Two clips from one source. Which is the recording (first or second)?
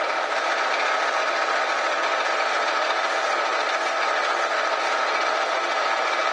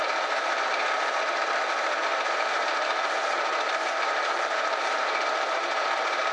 first